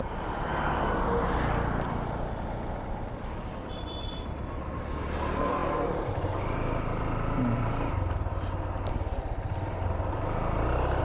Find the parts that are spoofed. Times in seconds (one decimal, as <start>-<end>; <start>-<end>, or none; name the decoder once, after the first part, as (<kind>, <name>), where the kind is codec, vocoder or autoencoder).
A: none